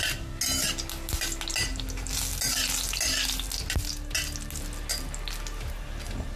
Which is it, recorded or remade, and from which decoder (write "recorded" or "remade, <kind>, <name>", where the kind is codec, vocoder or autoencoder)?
recorded